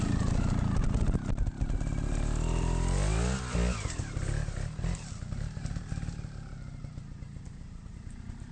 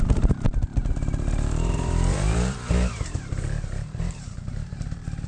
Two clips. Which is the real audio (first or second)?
first